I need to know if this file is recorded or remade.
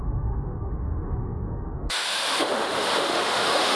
remade